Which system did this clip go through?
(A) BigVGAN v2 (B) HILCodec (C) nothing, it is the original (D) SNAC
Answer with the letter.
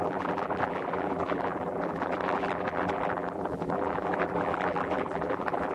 A